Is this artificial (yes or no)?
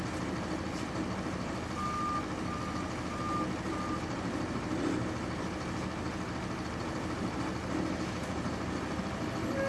no